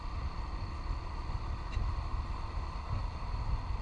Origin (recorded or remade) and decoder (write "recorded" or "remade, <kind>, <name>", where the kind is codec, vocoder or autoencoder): recorded